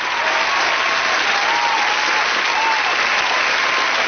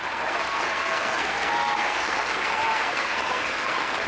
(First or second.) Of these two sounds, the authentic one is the first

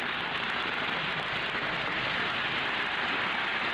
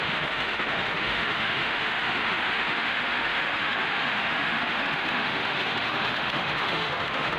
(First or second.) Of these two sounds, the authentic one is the first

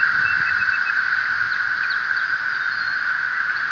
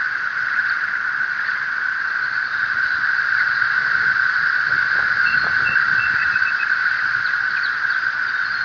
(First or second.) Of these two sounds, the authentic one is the first